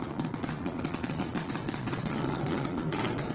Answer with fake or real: fake